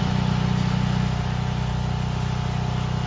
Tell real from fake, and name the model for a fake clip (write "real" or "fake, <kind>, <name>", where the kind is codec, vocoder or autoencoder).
real